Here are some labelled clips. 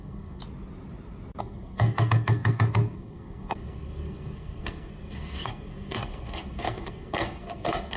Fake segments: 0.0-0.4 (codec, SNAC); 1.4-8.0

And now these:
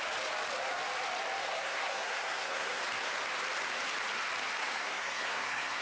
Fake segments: 1.4-2.8 (codec, SNAC); 4.6-5.8

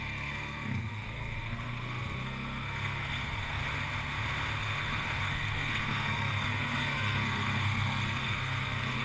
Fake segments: 0.0-3.6 (codec, SNAC); 4.6-9.0

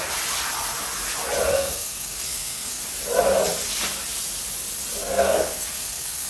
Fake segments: 1.5-2.8 (codec, SNAC); 5.0-6.3

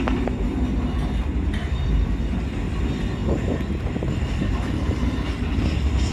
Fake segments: none